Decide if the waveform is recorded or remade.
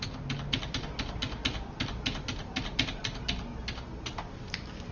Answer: recorded